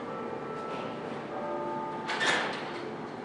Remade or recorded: recorded